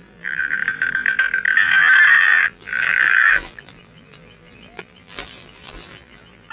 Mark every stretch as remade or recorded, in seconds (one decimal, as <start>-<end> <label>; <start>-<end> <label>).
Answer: 0.0-0.6 remade; 0.6-2.2 recorded; 2.2-6.5 remade